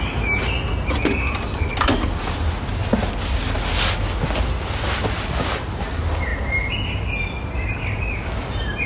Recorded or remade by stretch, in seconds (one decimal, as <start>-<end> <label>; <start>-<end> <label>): 0.0-8.9 recorded